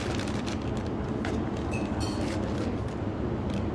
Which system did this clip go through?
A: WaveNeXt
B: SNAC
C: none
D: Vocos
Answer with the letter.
C